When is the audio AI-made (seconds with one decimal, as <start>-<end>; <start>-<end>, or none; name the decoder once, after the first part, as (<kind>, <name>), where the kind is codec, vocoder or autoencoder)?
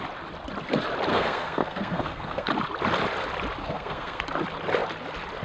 1.1-2.5 (codec, SNAC); 3.6-4.2